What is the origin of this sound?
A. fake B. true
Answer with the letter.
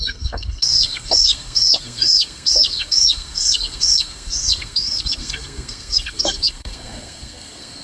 A